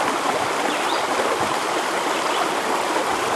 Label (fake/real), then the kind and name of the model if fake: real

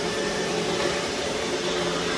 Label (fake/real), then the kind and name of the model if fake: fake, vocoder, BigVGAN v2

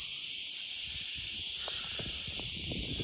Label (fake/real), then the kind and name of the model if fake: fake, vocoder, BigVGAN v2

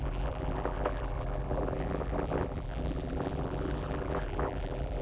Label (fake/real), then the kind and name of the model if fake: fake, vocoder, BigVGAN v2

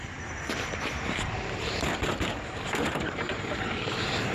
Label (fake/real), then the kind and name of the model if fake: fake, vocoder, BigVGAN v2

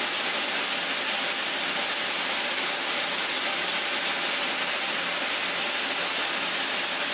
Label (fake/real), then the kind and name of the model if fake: real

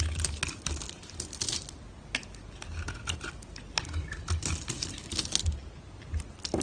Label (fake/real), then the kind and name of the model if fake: real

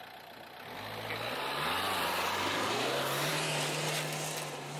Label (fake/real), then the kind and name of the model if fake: real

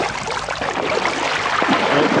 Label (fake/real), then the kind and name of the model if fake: real